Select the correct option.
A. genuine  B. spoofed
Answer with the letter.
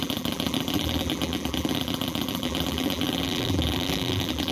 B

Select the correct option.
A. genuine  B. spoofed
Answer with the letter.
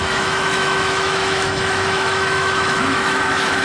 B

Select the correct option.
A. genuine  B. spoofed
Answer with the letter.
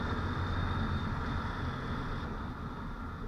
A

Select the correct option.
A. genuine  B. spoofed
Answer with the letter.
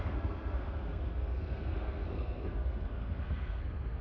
B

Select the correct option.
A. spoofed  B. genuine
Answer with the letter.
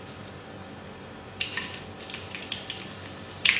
B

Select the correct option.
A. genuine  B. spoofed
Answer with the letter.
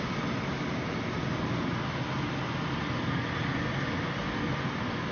A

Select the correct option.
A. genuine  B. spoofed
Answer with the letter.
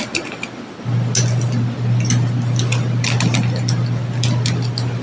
A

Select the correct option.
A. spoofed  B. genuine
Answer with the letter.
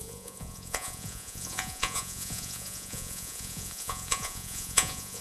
A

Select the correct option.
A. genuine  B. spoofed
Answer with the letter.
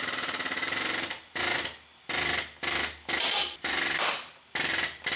B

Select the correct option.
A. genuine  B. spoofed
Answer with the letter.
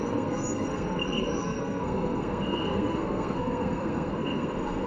B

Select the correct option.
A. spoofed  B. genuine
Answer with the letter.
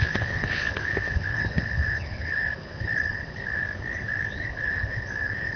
A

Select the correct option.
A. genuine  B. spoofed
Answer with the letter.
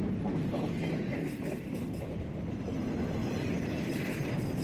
A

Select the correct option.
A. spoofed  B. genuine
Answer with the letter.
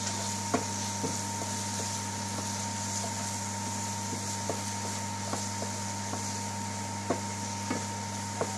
B